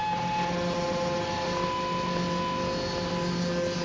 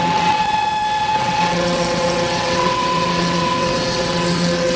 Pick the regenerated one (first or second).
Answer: second